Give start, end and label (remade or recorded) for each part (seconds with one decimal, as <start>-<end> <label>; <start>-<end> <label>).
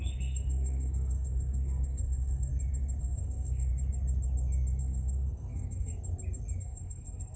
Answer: 0.0-2.5 remade; 2.5-3.0 recorded; 3.0-3.7 remade; 3.7-4.8 recorded; 4.8-5.9 remade; 5.9-6.6 recorded; 6.6-7.4 remade